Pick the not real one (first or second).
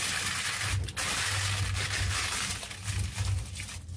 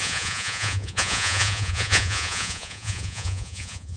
second